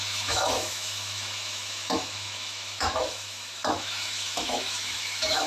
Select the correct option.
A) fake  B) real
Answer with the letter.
A